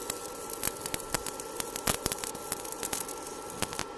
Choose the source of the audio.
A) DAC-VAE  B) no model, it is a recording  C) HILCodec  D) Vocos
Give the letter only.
B